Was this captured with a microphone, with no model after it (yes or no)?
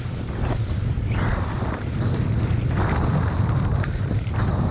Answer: no